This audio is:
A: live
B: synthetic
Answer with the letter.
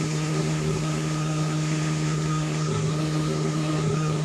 B